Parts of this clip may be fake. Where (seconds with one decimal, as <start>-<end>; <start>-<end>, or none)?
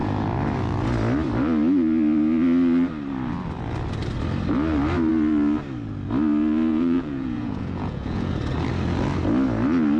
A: 6.7-8.3